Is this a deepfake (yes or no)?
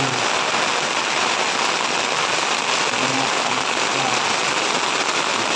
no